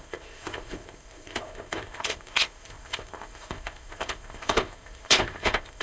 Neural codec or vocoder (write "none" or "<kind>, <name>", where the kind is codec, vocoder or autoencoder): codec, ZipCodec